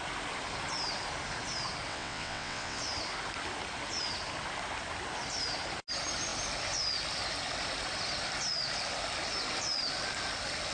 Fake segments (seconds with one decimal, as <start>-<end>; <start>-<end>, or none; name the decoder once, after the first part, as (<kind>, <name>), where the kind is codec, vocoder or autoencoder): 1.9-2.8 (vocoder, WaveNeXt)